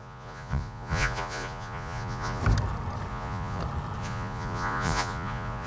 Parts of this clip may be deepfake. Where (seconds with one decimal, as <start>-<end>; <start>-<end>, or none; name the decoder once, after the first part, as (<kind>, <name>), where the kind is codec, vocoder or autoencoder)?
0.0-2.4 (vocoder, Vocos); 3.1-3.6; 4.0-5.7